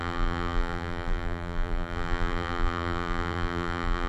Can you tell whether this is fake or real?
fake